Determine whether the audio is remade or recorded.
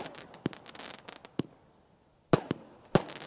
recorded